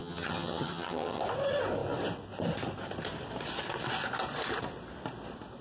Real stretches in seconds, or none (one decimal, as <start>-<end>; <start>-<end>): 1.2-5.6